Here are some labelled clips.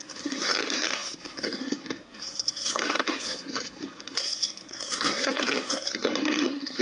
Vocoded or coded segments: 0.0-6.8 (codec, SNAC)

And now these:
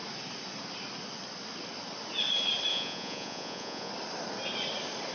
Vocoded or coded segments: 2.7-3.9 (vocoder, Vocos)

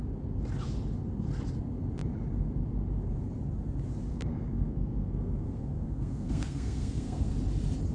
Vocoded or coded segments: 4.1-7.3 (codec, SNAC)

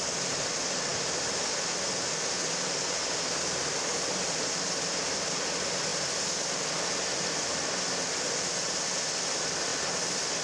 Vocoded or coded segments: none

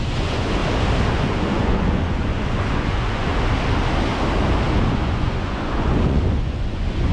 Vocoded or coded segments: 0.0-0.6 (vocoder, Vocos); 1.1-3.3; 4.9-7.1